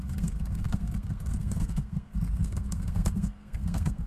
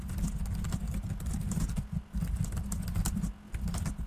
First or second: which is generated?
first